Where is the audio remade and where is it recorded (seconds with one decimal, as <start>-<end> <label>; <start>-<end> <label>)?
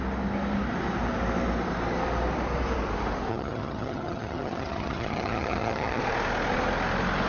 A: 0.0-3.3 recorded; 3.3-6.0 remade; 6.0-7.3 recorded